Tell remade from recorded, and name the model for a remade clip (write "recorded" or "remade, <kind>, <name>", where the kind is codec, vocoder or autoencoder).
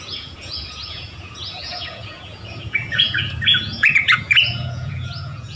remade, vocoder, Vocos